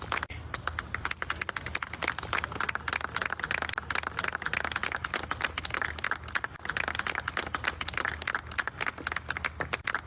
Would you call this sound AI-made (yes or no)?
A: no